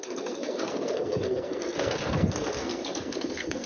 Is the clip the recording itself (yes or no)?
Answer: no